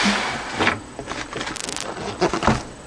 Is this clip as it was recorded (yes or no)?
yes